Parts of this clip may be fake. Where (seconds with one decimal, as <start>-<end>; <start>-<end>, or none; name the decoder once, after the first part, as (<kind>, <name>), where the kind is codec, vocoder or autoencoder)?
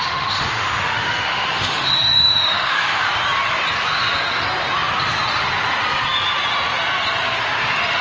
0.0-3.1 (autoencoder, DAC-VAE)